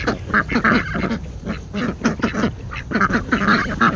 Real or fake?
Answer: fake